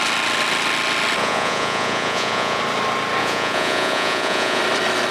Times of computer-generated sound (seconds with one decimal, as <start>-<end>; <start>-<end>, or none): 1.2-2.6; 3.2-4.6